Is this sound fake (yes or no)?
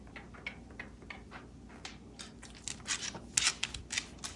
no